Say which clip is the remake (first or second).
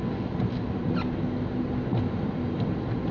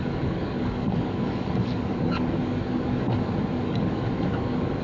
second